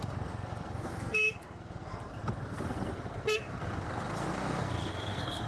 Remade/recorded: remade